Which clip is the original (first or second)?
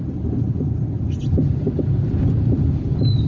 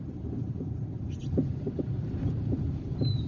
first